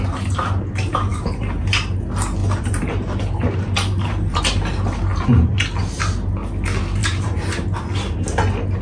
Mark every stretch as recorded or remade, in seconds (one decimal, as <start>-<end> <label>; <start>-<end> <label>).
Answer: 0.0-1.1 recorded; 1.1-2.0 remade; 2.0-2.4 recorded; 2.4-4.4 remade; 4.4-7.0 recorded; 7.0-7.5 remade; 7.5-8.8 recorded